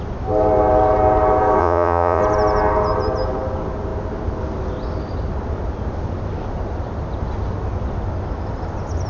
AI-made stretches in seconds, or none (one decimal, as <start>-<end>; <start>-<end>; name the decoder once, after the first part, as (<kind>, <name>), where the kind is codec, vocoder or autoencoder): 1.6-2.2 (vocoder, Vocos)